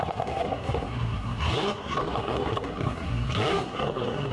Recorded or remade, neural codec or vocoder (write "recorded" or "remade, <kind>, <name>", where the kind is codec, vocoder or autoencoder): remade, codec, SNAC